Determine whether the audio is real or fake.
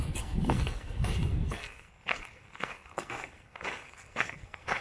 fake